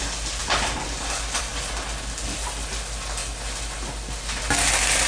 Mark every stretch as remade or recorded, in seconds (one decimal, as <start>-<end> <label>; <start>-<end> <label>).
0.0-5.1 recorded